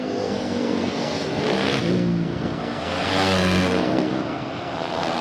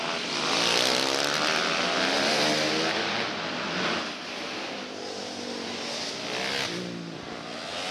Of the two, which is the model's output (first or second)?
first